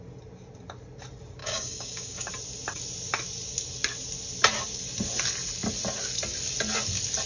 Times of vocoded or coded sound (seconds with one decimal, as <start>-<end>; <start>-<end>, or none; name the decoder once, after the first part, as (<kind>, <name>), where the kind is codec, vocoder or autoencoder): 1.4-2.3 (codec, DAC)

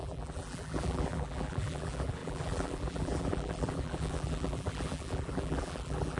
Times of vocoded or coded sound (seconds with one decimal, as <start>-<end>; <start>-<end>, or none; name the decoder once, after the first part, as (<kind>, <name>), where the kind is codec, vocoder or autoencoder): 0.0-6.2 (vocoder, BigVGAN v2)